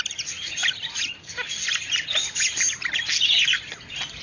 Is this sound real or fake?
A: real